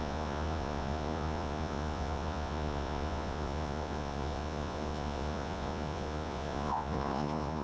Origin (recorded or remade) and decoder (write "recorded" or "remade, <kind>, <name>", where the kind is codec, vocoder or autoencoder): remade, vocoder, Vocos